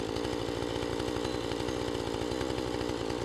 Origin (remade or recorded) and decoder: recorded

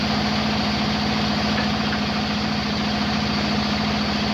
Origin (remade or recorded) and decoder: recorded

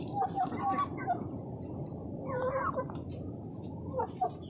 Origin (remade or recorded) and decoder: remade, vocoder, BigVGAN v2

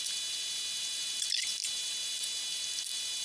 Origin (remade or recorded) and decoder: remade, vocoder, BigVGAN v2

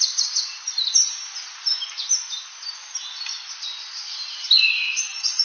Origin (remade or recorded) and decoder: remade, vocoder, BigVGAN v2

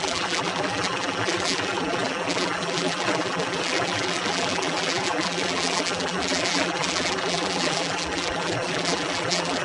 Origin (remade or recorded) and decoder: remade, vocoder, BigVGAN v2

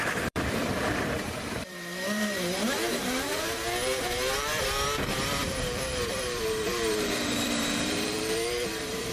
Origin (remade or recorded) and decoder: remade, vocoder, BigVGAN v2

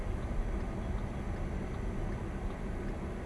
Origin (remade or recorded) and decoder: recorded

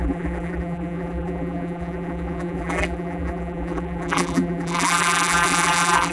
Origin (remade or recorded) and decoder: remade, vocoder, BigVGAN v2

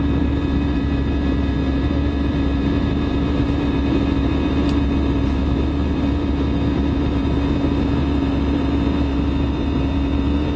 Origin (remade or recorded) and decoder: remade, vocoder, BigVGAN v2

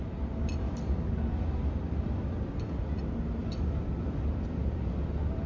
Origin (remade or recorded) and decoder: remade, vocoder, BigVGAN v2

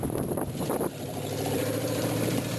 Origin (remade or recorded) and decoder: remade, vocoder, BigVGAN v2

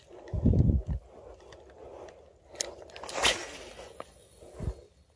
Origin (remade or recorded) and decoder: recorded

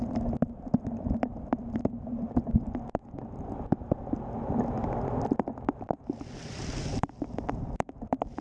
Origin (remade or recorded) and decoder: remade, vocoder, BigVGAN v2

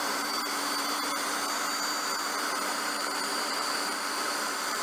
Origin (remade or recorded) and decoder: remade, vocoder, BigVGAN v2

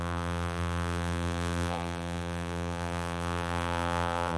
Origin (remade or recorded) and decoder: remade, vocoder, BigVGAN v2